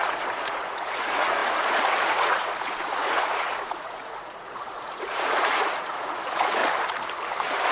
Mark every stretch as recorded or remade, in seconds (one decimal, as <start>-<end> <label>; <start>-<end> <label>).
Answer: 0.0-6.6 remade; 6.6-7.7 recorded

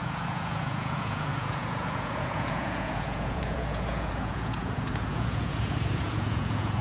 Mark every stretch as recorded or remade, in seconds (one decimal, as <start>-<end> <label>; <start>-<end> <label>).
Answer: 0.0-6.8 remade